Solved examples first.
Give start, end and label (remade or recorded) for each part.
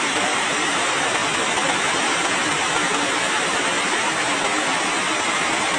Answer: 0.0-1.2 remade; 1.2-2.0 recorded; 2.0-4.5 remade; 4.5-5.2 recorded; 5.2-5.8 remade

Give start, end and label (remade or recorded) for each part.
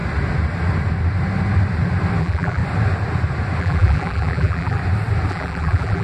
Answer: 0.0-2.2 recorded; 2.2-2.6 remade; 2.6-3.6 recorded; 3.6-4.8 remade; 4.8-5.3 recorded; 5.3-6.0 remade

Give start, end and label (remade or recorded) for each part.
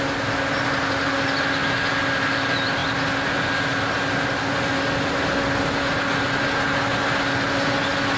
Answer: 0.0-8.2 recorded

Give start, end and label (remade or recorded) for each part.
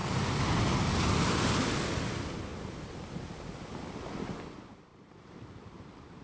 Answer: 0.0-4.9 recorded; 4.9-6.2 remade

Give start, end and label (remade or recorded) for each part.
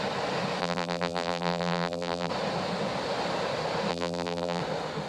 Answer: 0.0-0.6 recorded; 0.6-2.3 remade; 2.3-3.9 recorded; 3.9-4.6 remade; 4.6-5.1 recorded